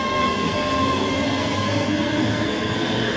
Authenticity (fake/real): fake